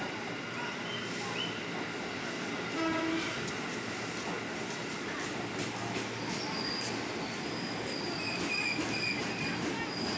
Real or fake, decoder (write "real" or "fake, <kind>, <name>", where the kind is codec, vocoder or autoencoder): real